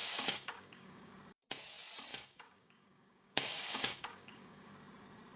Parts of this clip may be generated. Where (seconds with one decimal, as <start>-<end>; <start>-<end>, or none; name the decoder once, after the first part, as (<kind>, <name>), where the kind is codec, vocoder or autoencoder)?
0.0-1.1 (codec, DAC); 2.1-4.7

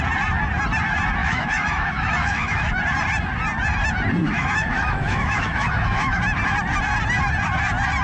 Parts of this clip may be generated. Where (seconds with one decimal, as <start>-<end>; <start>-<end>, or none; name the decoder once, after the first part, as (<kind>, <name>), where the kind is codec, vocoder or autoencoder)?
1.2-2.7 (autoencoder, DAC-VAE); 4.2-6.2

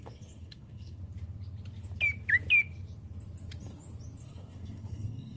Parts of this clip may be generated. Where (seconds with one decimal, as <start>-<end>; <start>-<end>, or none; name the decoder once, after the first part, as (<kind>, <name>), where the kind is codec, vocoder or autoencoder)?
0.0-1.0 (codec, SNAC); 4.2-5.4

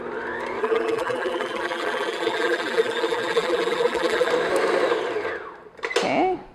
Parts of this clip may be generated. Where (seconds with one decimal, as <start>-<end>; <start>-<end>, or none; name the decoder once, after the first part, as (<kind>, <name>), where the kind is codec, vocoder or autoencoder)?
0.6-4.3 (vocoder, BigVGAN v2)

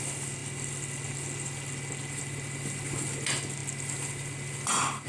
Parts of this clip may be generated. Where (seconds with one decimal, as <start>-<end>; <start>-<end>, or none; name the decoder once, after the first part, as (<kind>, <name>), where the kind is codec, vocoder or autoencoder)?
none